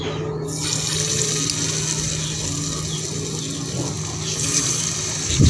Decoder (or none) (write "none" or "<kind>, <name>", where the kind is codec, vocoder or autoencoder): none